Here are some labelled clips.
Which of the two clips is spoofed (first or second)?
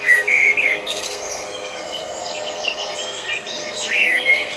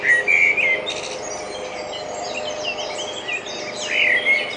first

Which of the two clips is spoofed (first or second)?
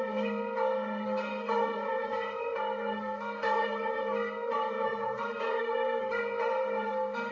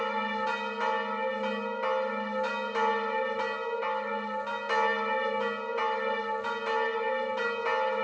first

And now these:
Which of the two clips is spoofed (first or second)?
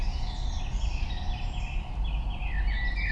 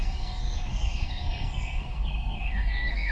second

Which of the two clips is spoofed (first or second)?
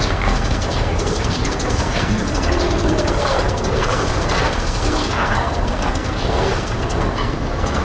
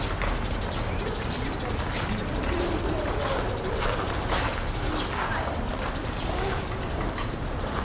first